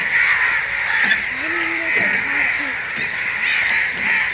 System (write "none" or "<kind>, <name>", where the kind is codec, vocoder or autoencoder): none